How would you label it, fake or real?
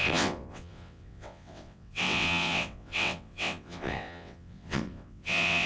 fake